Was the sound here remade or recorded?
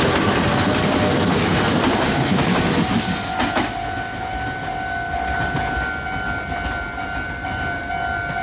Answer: recorded